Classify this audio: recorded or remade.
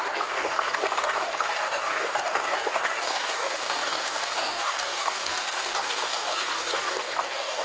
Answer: remade